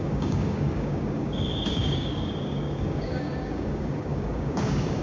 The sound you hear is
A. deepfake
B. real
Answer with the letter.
A